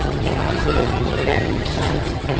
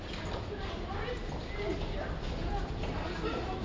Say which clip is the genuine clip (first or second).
second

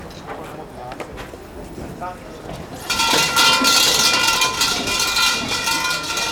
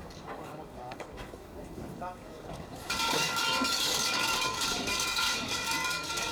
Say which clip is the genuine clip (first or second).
first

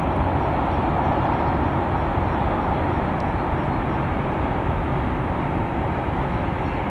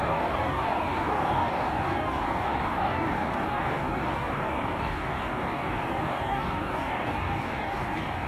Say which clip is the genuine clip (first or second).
first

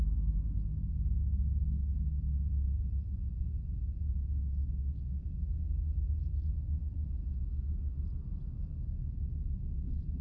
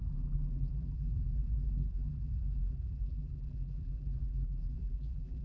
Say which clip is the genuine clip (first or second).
first